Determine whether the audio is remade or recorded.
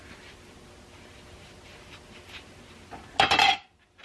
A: recorded